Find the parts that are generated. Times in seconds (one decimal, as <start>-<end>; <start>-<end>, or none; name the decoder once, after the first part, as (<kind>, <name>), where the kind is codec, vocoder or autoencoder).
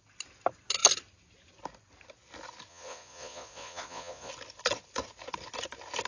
2.7-4.3 (vocoder, Vocos)